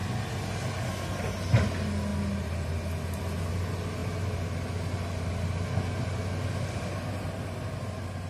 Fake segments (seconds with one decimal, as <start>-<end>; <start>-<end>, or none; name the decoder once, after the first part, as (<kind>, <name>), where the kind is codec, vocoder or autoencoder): none